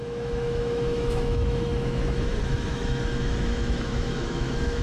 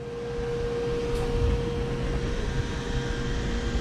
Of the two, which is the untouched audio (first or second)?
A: second